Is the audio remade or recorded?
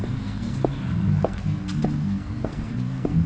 remade